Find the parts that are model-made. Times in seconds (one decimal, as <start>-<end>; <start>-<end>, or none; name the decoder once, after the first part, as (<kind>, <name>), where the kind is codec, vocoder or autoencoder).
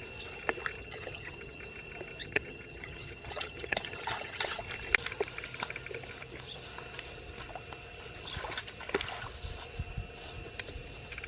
0.8-1.6 (vocoder, HiFi-GAN); 2.2-4.6